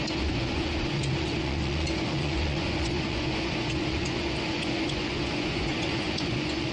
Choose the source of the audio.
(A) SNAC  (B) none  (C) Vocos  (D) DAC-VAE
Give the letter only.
C